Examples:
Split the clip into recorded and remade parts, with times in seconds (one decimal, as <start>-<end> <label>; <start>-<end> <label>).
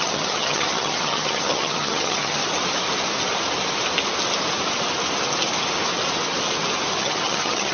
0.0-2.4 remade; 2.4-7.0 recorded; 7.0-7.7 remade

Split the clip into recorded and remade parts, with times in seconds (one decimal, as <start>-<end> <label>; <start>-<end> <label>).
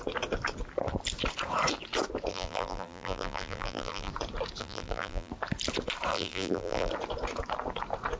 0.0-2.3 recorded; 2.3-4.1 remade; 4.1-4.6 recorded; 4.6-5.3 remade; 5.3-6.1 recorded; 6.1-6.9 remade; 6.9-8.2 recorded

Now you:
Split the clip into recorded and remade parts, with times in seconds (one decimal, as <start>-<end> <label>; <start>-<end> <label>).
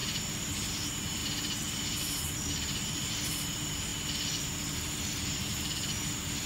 0.0-0.7 recorded; 0.7-3.9 remade; 3.9-4.4 recorded; 4.4-6.5 remade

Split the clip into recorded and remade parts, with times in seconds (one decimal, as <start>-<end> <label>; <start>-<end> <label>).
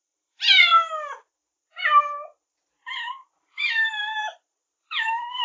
0.0-0.7 remade; 0.7-3.1 recorded; 3.1-5.4 remade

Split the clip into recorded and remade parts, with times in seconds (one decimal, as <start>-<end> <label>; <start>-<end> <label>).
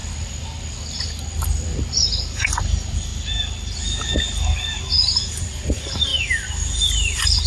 0.0-1.9 recorded; 1.9-3.1 remade; 3.1-5.4 recorded; 5.4-6.1 remade; 6.1-6.7 recorded; 6.7-7.5 remade